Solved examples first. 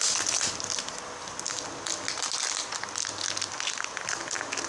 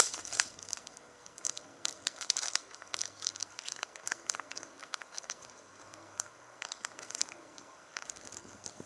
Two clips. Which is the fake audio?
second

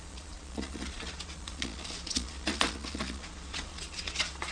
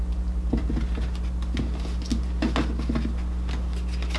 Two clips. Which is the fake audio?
first